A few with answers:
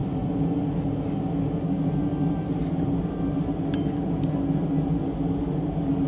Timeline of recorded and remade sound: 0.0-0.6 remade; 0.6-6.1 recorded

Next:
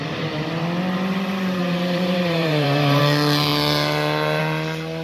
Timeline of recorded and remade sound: 0.0-1.6 recorded; 1.6-3.0 remade; 3.0-5.0 recorded